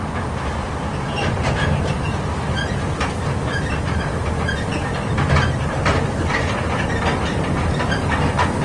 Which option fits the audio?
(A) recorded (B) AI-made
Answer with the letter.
A